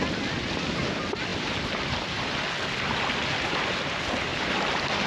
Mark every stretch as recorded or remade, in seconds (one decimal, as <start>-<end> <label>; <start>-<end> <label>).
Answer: 0.0-4.3 recorded; 4.3-5.1 remade